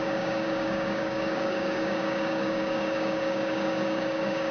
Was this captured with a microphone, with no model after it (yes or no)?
no